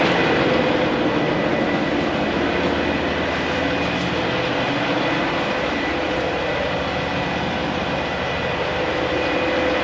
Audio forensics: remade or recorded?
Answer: recorded